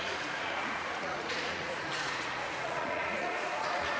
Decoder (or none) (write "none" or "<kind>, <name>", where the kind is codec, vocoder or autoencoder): vocoder, Vocos